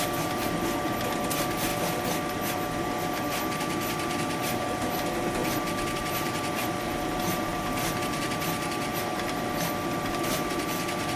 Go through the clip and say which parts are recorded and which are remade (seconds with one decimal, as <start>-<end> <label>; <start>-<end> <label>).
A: 0.0-5.4 remade; 5.4-6.0 recorded; 6.0-8.9 remade; 8.9-10.1 recorded; 10.1-11.2 remade